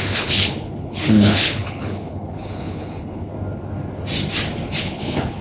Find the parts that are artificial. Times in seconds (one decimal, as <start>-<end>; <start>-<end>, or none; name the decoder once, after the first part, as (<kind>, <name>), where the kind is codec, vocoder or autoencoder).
0.0-3.3 (codec, HILCodec); 4.8-5.4